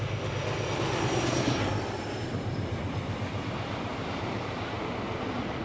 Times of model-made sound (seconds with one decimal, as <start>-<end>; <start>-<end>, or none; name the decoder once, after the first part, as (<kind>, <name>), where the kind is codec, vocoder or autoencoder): none